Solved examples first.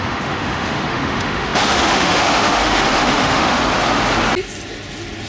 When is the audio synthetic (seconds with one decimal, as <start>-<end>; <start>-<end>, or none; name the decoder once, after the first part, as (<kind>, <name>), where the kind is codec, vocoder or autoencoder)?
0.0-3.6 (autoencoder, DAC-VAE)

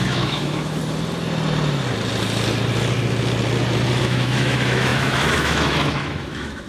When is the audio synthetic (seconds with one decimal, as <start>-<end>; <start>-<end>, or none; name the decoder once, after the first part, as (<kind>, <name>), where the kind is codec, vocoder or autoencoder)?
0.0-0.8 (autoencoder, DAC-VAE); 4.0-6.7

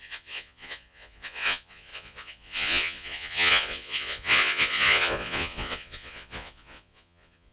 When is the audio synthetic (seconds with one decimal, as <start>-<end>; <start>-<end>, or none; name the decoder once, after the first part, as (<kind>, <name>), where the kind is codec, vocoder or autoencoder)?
0.0-7.5 (vocoder, Vocos)

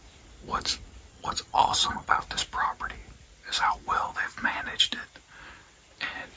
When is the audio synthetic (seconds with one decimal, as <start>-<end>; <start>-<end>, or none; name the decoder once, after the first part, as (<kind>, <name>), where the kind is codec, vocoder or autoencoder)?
1.1-2.2 (vocoder, HiFi-GAN)

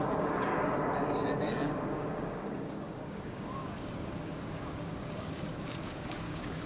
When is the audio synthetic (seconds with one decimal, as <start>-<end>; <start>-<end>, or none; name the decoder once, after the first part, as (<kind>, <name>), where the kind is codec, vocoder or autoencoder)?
0.0-0.5 (codec, DAC); 1.4-6.7

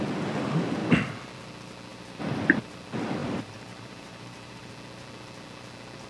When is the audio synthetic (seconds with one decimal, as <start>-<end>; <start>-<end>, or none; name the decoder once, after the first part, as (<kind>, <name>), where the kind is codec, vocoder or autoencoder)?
1.9-2.7 (vocoder, BigVGAN v2); 3.2-4.7

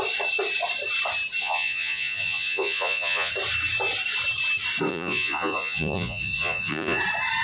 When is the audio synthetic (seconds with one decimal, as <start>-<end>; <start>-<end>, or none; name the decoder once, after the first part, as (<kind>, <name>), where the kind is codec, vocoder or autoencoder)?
1.4-3.3 (vocoder, Vocos); 4.9-7.0